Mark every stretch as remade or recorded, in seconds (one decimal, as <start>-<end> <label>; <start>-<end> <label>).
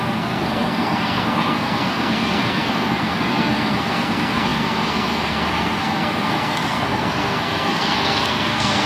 0.0-8.9 remade